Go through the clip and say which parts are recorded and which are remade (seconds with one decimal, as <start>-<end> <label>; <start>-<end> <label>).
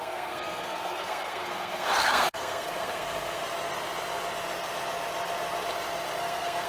0.0-3.4 remade; 3.4-6.2 recorded; 6.2-6.7 remade